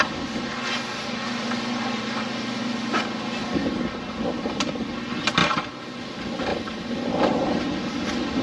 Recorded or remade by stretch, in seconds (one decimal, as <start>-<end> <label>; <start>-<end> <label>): 0.0-5.4 recorded; 5.4-6.0 remade; 6.0-6.5 recorded; 6.5-7.6 remade; 7.6-8.4 recorded